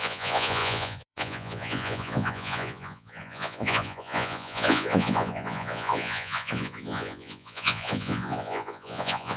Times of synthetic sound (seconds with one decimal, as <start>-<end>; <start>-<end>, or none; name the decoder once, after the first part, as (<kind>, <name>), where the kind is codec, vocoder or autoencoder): 0.0-9.4 (vocoder, Vocos)